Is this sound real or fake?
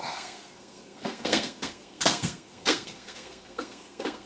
fake